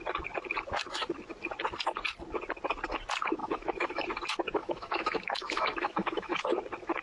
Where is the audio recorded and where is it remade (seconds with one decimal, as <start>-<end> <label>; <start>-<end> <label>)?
0.0-3.4 recorded; 3.4-4.0 remade; 4.0-4.6 recorded; 4.6-6.4 remade; 6.4-7.0 recorded